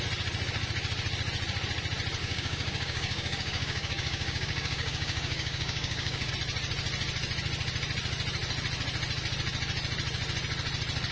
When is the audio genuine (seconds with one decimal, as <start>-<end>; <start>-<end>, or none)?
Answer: 0.0-2.2; 6.3-11.1